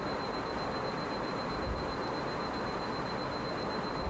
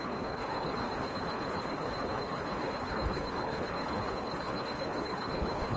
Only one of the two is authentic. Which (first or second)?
first